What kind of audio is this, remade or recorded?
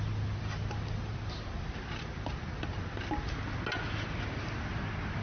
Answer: recorded